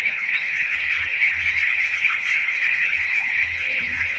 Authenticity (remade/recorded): remade